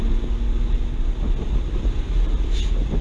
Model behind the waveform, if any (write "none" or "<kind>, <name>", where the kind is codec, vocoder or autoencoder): none